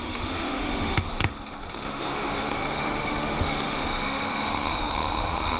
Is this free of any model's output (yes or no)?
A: no